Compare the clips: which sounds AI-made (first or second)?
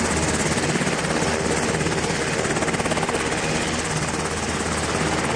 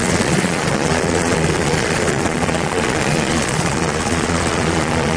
second